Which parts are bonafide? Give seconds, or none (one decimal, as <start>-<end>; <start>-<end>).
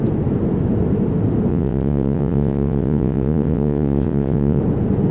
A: 0.0-1.5; 4.6-5.1